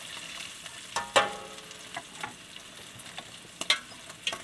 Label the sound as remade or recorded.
recorded